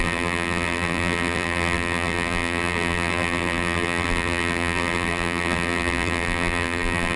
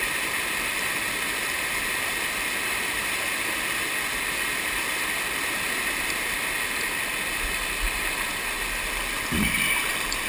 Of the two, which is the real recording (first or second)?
second